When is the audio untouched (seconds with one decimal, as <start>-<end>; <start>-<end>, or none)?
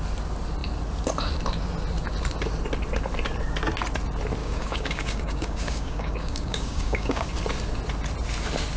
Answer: 0.0-4.4; 7.3-8.8